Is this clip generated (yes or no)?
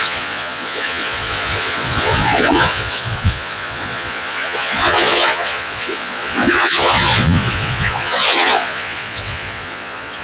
yes